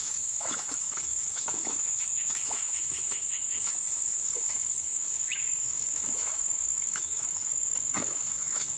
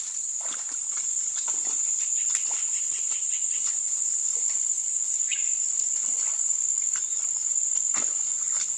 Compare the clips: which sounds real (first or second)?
second